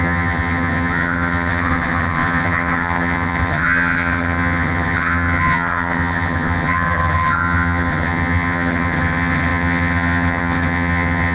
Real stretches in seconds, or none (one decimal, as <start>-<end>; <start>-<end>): none